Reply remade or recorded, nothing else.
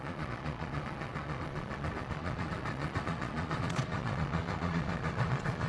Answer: remade